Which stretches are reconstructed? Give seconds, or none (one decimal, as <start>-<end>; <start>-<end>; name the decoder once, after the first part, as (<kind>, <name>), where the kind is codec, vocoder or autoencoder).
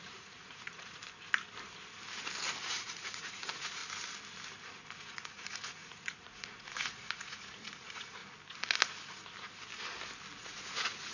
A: 0.0-1.0 (vocoder, Vocos); 2.6-3.8; 5.0-8.2; 10.4-11.1